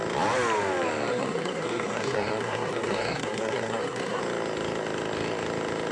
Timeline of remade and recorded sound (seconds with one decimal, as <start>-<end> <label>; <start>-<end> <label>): 0.0-1.1 recorded; 1.1-4.2 remade; 4.2-5.9 recorded

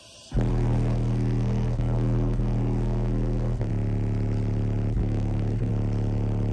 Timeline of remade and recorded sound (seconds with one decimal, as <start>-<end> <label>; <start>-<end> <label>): 0.0-0.5 recorded; 0.5-3.7 remade; 3.7-5.0 recorded; 5.0-5.7 remade; 5.7-6.5 recorded